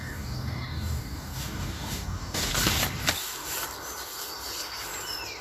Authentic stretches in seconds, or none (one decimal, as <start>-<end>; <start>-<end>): 2.5-5.4